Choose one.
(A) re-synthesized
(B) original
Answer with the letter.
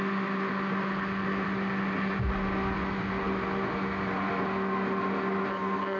B